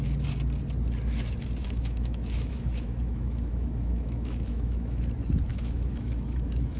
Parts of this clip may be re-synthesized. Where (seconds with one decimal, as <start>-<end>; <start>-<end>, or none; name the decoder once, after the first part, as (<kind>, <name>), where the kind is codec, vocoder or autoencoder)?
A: 1.6-5.0 (autoencoder, DAC-VAE); 5.5-6.8